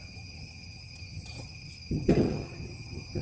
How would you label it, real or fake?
fake